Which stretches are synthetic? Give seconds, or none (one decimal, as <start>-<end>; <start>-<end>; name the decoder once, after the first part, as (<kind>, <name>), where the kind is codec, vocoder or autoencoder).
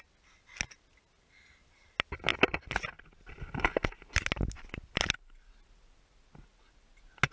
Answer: none